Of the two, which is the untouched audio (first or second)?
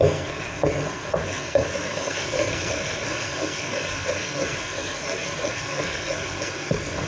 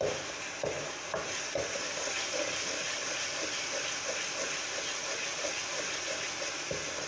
second